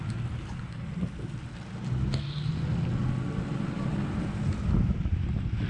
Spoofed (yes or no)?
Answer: no